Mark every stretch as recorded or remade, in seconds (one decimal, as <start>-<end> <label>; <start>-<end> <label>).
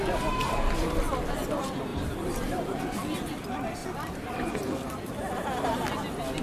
0.0-1.9 recorded; 1.9-2.8 remade; 2.8-3.8 recorded; 3.8-4.5 remade; 4.5-6.4 recorded